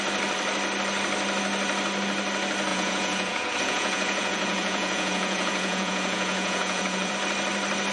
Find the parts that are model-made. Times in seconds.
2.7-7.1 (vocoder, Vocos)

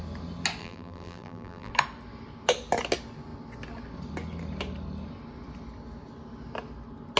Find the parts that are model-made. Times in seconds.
0.6-1.7 (vocoder, BigVGAN v2)

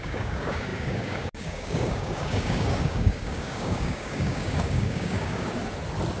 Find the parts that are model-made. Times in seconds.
0.0-5.6 (codec, DAC)

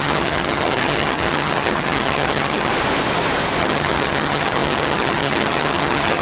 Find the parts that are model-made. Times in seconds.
0.0-2.7 (vocoder, HiFi-GAN); 3.6-6.2